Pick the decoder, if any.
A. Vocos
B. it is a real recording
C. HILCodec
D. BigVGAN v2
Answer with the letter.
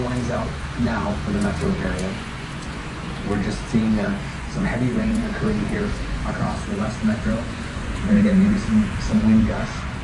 A